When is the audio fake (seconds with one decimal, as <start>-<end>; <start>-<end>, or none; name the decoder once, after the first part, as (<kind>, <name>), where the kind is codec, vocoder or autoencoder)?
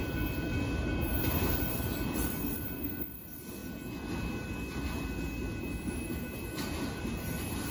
0.0-3.6 (vocoder, BigVGAN v2); 5.6-7.7